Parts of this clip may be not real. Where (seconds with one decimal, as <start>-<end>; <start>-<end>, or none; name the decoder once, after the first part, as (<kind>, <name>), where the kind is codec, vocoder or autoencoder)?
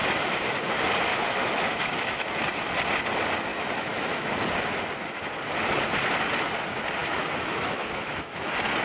1.1-2.2 (autoencoder, DAC-VAE); 3.5-4.3; 7.0-8.4